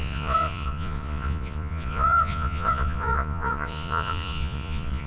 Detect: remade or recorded remade